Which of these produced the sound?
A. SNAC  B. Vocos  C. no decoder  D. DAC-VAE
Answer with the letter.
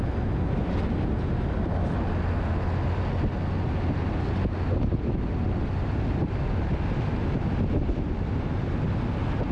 C